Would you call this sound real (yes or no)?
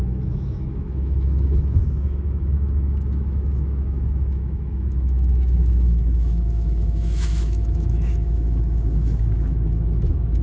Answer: no